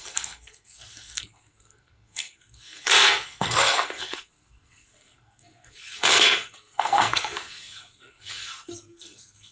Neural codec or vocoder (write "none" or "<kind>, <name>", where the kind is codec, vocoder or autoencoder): codec, SNAC